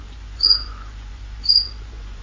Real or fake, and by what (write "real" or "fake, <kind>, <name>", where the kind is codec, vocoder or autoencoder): fake, vocoder, Vocos